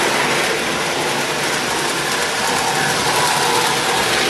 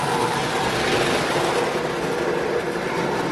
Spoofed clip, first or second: second